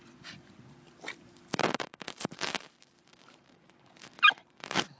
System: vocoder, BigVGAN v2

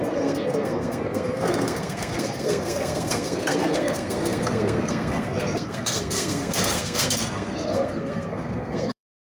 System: codec, SNAC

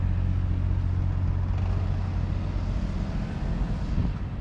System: none